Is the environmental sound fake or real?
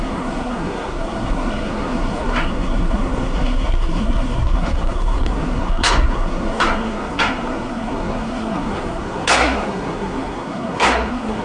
fake